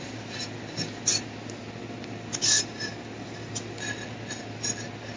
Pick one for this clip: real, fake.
real